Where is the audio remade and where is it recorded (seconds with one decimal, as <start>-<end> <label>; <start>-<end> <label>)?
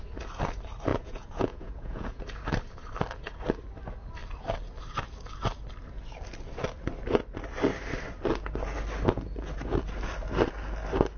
0.0-0.9 recorded; 0.9-2.2 remade; 2.2-11.2 recorded